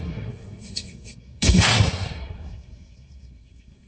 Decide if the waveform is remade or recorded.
remade